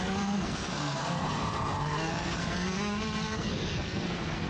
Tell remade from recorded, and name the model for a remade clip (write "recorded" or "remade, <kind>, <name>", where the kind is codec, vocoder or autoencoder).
remade, codec, SNAC